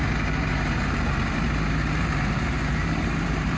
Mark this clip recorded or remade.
remade